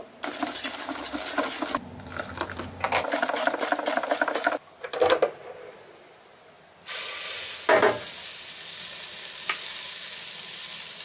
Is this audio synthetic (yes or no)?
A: no